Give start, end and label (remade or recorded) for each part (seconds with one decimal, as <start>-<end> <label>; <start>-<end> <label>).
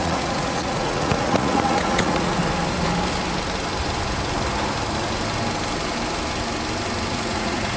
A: 0.0-2.4 remade; 2.4-7.1 recorded; 7.1-7.8 remade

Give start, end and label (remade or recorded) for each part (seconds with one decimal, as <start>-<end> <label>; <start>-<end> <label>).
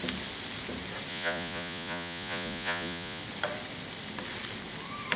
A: 0.0-1.1 recorded; 1.1-3.2 remade; 3.2-5.2 recorded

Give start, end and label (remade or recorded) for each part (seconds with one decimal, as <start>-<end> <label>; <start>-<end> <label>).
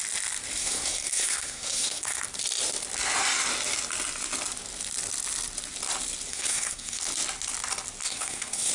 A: 0.0-0.6 recorded; 0.6-2.2 remade; 2.2-6.3 recorded; 6.3-7.0 remade; 7.0-8.0 recorded; 8.0-8.7 remade